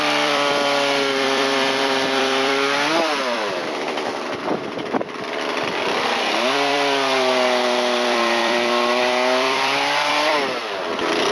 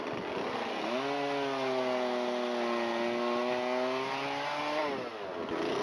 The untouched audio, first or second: second